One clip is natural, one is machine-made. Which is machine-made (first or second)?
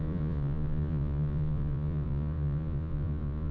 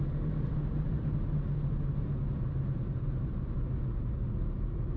first